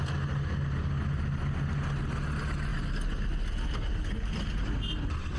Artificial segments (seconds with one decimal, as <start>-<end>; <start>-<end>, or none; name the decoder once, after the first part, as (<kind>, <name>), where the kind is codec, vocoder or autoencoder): none